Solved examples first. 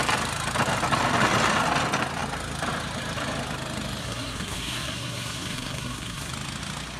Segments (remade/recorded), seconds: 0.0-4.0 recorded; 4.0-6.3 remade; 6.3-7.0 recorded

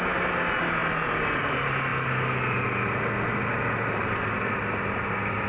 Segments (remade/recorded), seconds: 0.0-5.5 recorded

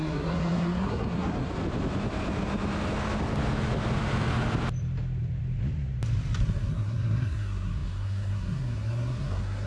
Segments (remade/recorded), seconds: 0.0-1.5 remade; 1.5-6.4 recorded; 6.4-9.7 remade

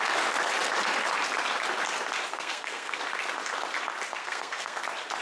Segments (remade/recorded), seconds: 0.0-2.3 recorded; 2.3-3.0 remade; 3.0-4.2 recorded; 4.2-4.8 remade; 4.8-5.2 recorded

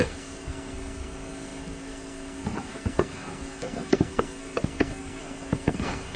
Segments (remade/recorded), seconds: 0.0-6.2 remade

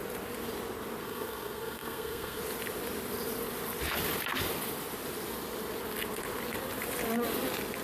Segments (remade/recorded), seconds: 0.0-1.0 recorded; 1.0-2.4 remade; 2.4-7.8 recorded

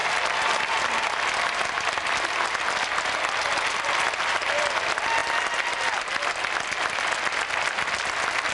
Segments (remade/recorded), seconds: 0.0-8.5 recorded